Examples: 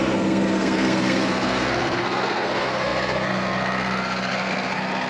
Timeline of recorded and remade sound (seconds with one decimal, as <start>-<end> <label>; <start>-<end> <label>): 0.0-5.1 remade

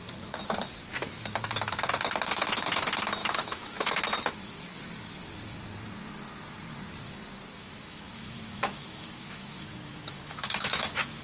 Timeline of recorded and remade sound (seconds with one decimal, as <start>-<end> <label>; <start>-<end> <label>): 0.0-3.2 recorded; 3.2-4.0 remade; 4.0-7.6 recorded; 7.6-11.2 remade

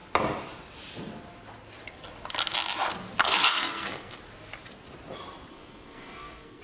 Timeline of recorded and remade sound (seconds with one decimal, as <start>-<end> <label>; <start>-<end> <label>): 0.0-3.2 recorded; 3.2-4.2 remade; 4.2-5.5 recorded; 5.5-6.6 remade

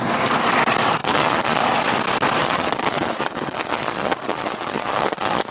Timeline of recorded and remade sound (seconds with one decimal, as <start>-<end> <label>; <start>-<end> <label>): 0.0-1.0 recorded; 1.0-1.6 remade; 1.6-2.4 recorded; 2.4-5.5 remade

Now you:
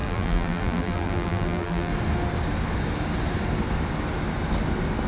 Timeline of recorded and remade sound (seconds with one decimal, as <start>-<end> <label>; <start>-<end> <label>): 0.0-1.9 remade; 1.9-5.1 recorded

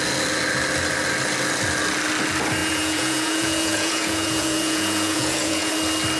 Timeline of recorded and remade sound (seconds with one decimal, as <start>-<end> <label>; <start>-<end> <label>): 0.0-2.6 recorded; 2.6-5.7 remade; 5.7-6.2 recorded